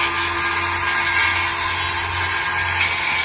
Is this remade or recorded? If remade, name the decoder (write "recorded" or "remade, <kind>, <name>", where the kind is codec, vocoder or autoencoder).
recorded